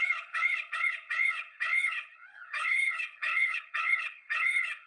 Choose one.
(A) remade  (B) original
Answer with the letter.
A